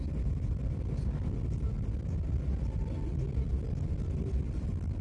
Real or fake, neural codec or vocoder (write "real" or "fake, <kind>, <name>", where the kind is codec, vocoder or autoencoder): real